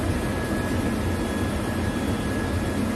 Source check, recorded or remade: recorded